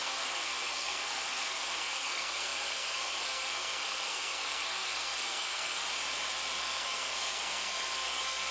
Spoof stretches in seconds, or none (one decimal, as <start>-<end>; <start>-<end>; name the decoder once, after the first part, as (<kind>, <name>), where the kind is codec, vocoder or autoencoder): 0.0-5.8 (codec, SNAC); 6.6-8.5